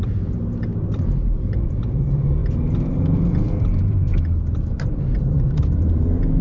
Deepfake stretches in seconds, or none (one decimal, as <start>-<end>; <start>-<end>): 0.0-6.4